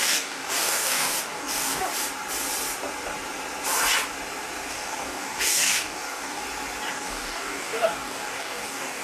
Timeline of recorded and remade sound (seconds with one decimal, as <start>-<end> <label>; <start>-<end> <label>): 0.0-1.8 remade; 1.8-4.7 recorded; 4.7-6.4 remade; 6.4-6.9 recorded; 6.9-9.0 remade